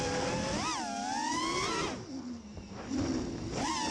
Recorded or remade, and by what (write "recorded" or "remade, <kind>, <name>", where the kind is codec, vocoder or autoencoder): recorded